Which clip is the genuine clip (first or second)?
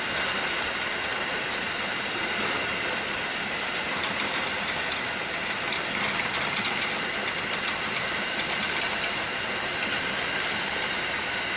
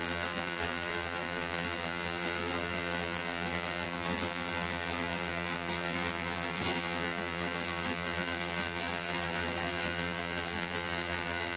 first